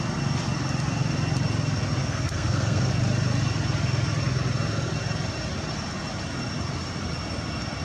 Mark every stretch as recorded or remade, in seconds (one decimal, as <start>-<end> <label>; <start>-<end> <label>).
0.0-2.0 recorded; 2.0-2.9 remade; 2.9-7.8 recorded